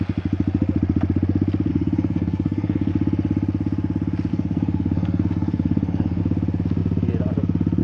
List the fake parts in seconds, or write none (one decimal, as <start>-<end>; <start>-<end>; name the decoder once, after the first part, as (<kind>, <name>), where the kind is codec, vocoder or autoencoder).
1.7-2.9 (codec, SNAC); 4.3-6.2